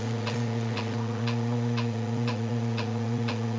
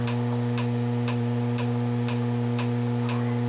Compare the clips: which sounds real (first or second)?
second